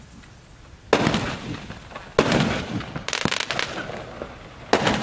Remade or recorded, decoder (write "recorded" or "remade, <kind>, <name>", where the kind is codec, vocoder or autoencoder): recorded